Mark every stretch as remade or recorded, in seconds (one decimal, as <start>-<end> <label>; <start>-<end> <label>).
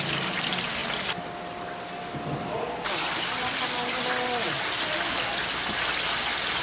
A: 0.0-6.6 recorded